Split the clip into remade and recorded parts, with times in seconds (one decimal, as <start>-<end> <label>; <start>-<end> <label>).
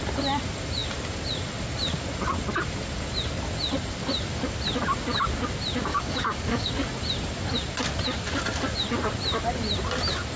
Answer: 0.0-5.9 recorded; 5.9-6.7 remade; 6.7-10.4 recorded